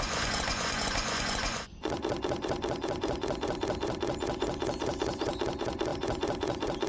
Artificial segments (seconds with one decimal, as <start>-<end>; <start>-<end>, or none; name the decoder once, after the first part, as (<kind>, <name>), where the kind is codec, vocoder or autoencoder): 0.0-6.9 (vocoder, Vocos)